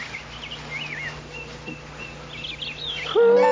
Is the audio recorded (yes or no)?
yes